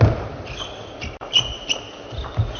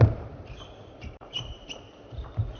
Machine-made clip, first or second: second